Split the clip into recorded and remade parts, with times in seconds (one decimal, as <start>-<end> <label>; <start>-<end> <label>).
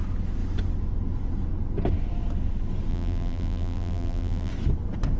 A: 0.0-2.9 recorded; 2.9-4.5 remade; 4.5-5.2 recorded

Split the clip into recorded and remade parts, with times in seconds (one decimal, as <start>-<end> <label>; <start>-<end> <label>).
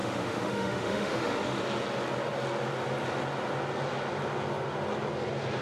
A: 0.0-1.6 remade; 1.6-5.6 recorded